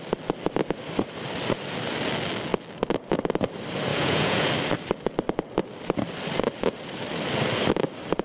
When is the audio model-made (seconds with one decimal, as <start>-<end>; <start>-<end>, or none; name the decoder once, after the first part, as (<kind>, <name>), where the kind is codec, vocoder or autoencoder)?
3.9-4.5 (vocoder, Vocos)